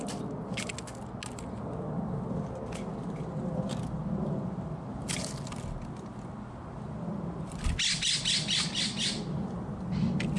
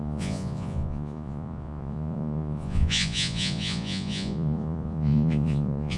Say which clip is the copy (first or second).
second